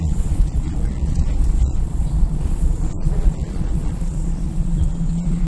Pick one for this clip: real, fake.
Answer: fake